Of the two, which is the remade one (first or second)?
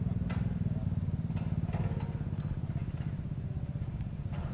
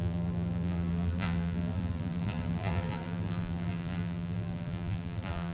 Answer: second